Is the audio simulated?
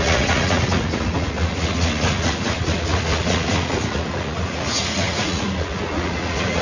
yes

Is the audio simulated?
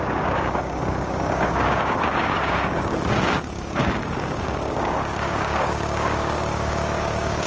yes